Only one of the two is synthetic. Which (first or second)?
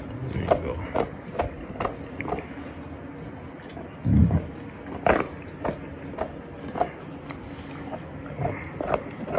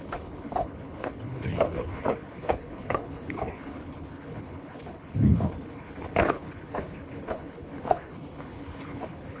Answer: second